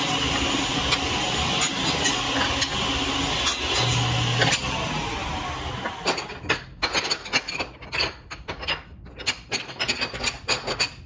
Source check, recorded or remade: recorded